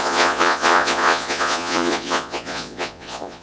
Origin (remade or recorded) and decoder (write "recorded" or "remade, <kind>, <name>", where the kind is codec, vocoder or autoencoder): remade, vocoder, Vocos